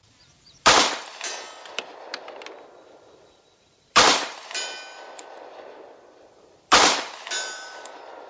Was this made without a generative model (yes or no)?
no